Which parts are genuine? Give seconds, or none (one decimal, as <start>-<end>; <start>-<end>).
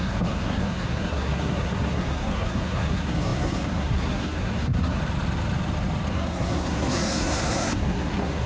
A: 5.0-6.1